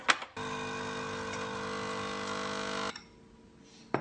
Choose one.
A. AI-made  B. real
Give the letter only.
B